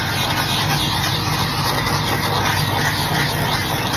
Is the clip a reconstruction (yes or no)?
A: no